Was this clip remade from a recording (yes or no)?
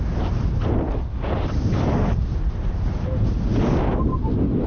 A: no